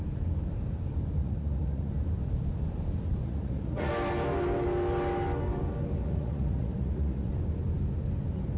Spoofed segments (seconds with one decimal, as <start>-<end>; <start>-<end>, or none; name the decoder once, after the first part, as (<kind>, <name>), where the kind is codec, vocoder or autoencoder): 1.2-1.9 (vocoder, Vocos); 3.2-3.9; 6.0-7.3